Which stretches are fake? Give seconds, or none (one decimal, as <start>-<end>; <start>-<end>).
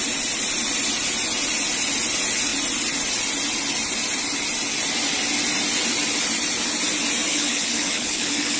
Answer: 7.3-8.6